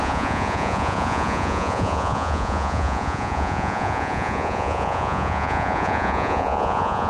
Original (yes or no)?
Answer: no